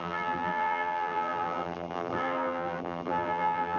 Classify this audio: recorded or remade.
remade